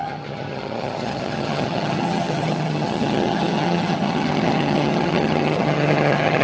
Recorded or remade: remade